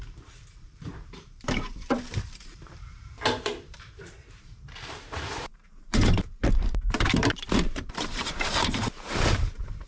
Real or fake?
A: fake